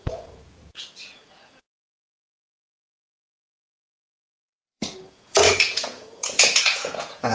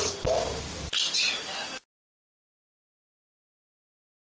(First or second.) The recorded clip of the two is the second